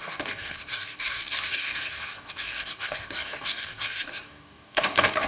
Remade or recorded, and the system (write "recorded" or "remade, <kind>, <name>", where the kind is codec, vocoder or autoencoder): remade, codec, DAC